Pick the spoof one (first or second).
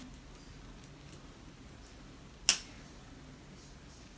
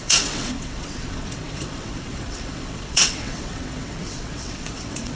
second